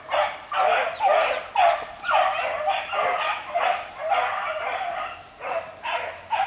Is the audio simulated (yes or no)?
no